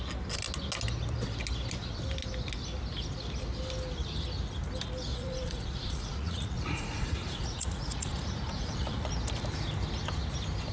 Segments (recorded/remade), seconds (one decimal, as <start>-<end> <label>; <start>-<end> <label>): 0.0-5.1 recorded; 5.1-9.1 remade; 9.1-10.7 recorded